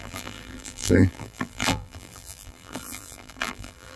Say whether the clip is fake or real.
fake